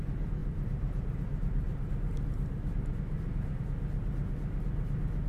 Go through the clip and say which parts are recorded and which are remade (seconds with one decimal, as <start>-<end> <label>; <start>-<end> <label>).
0.0-0.4 recorded; 0.4-3.6 remade; 3.6-5.3 recorded